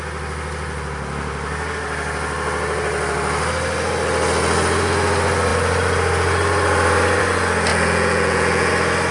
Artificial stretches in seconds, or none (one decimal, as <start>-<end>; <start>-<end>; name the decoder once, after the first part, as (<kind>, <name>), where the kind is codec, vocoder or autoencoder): 7.7-8.7 (vocoder, Vocos)